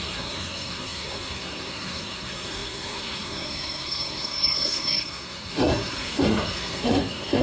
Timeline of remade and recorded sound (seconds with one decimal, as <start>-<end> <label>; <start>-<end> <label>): 0.0-7.4 remade